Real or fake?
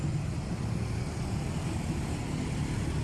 real